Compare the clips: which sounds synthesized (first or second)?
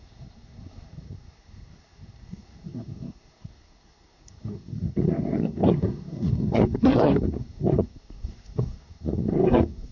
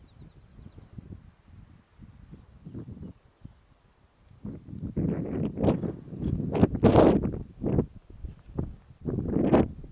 first